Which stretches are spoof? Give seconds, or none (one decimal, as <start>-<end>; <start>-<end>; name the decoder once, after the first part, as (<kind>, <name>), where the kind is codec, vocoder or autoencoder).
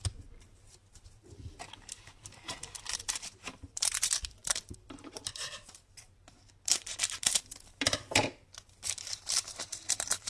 0.0-10.3 (vocoder, BigVGAN v2)